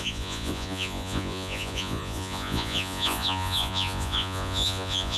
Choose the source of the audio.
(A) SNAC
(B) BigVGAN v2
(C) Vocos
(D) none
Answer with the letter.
C